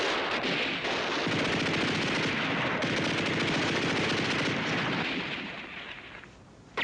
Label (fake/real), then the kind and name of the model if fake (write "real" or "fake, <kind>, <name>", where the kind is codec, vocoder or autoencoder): real